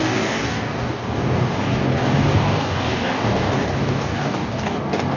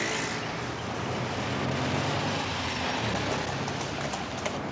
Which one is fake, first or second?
first